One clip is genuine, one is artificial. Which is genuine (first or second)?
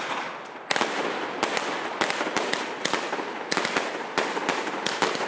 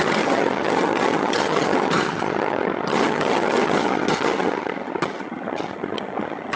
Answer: first